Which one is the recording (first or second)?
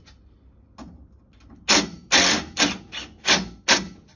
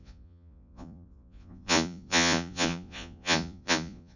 first